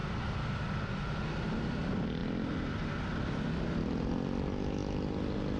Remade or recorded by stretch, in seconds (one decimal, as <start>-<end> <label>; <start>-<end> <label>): 0.0-5.6 recorded